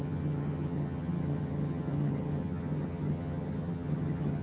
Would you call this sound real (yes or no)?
no